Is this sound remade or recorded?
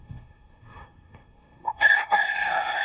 remade